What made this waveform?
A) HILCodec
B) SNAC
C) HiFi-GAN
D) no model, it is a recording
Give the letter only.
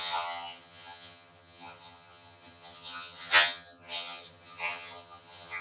C